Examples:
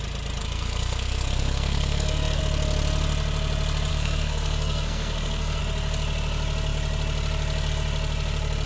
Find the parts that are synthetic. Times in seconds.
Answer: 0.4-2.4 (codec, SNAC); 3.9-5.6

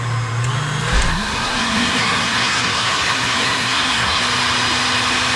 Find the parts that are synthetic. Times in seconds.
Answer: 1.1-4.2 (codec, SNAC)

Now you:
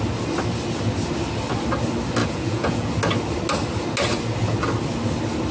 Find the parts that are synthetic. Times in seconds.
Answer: 2.2-2.9 (vocoder, Vocos)

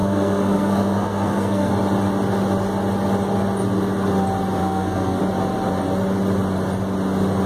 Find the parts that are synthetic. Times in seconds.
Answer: 0.0-1.7 (codec, SNAC); 4.6-5.2